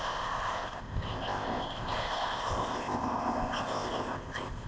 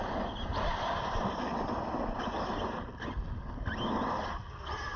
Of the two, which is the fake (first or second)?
first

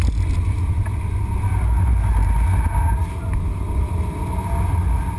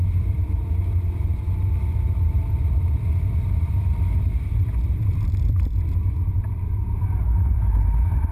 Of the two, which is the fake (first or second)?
second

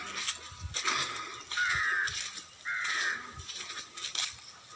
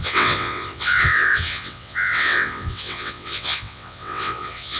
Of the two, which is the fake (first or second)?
second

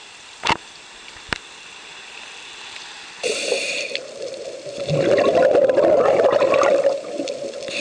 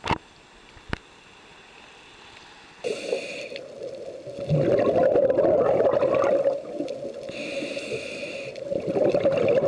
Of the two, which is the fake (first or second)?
first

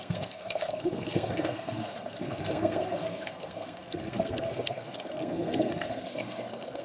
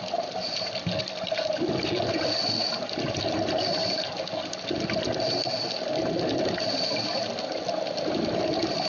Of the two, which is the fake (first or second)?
first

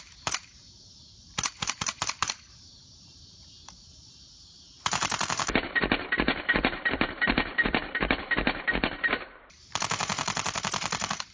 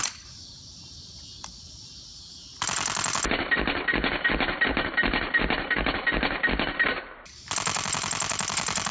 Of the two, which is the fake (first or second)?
first